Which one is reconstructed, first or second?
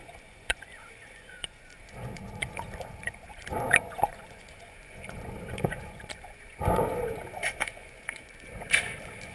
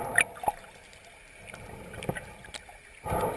first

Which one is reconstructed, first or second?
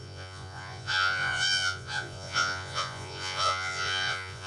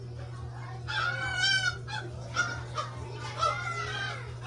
first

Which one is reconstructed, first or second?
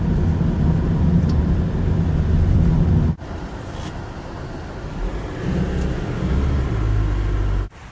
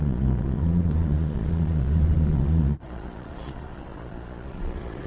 second